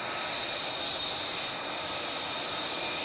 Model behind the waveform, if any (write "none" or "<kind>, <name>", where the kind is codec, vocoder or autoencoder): none